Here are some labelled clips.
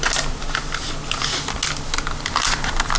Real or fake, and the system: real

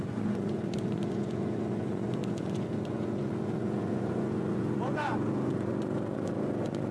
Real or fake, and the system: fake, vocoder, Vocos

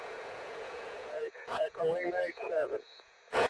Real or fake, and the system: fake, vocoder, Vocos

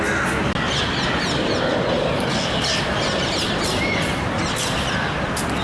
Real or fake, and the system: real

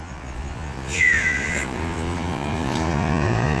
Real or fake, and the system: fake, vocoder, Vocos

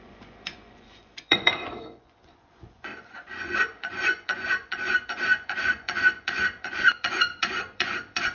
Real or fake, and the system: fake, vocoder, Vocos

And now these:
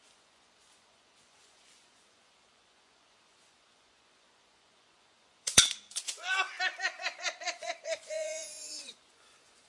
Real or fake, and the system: fake, vocoder, Vocos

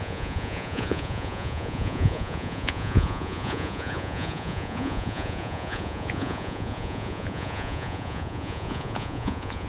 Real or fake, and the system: fake, vocoder, Vocos